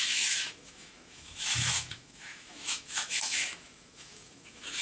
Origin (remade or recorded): remade